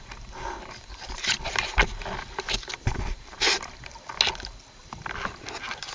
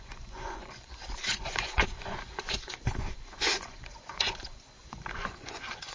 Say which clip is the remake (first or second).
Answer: second